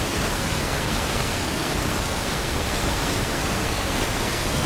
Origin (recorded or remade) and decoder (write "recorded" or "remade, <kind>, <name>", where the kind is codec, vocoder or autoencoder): remade, codec, SNAC